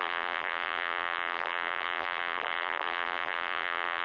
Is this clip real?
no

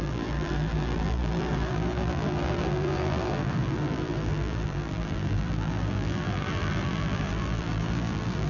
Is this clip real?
no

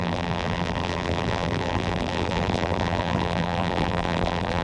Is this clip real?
no